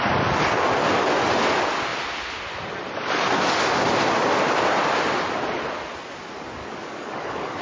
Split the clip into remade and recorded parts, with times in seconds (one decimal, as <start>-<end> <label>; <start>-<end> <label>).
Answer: 0.0-6.6 recorded; 6.6-7.6 remade